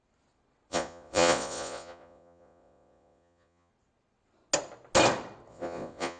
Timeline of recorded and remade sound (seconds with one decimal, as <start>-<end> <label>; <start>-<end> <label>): 0.0-0.7 recorded; 0.7-3.7 remade; 3.7-5.5 recorded; 5.5-6.2 remade